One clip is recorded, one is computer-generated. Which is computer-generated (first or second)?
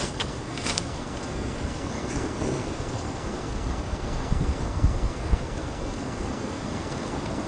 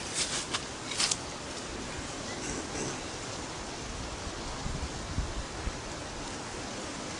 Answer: first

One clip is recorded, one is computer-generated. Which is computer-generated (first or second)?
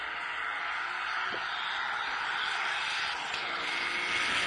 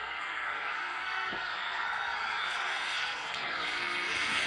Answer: second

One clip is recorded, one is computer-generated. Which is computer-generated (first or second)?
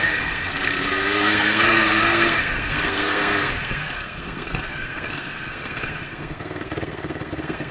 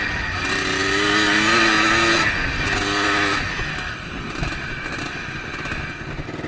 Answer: first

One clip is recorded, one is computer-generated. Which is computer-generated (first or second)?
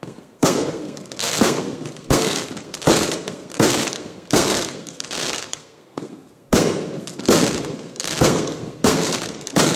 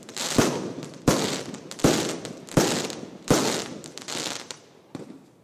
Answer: first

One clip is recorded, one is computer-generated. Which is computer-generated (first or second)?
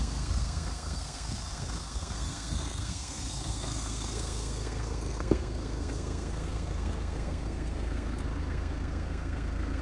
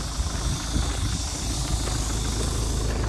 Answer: first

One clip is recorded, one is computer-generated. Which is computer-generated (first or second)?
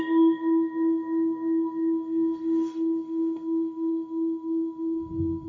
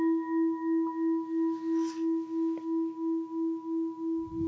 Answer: first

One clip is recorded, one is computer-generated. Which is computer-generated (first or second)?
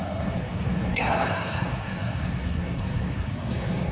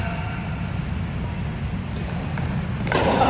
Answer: first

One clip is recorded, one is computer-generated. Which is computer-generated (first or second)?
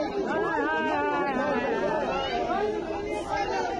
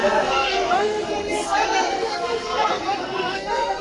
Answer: second